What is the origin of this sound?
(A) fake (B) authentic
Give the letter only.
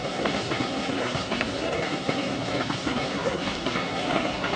A